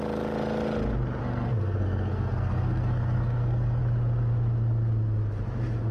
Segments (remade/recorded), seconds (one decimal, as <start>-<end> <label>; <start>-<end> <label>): 0.0-1.2 recorded; 1.2-3.8 remade; 3.8-5.9 recorded